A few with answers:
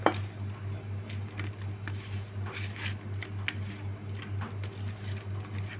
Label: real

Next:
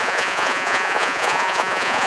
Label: fake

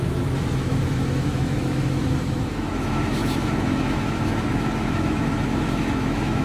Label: fake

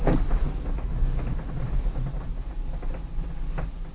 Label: real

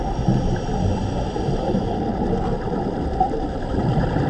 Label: real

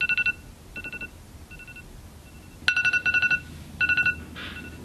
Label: real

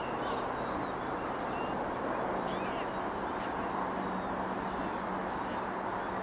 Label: real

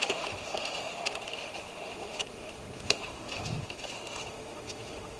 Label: fake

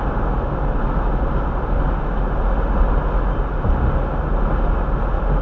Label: real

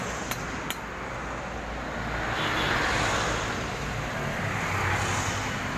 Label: real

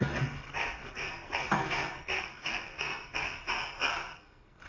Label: fake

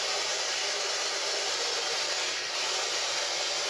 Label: real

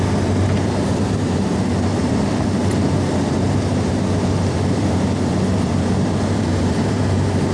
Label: fake